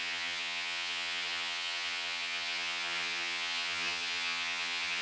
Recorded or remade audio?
remade